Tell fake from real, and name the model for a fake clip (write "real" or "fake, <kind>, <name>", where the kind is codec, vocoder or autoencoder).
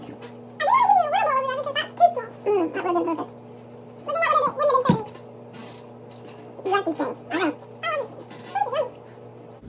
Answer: real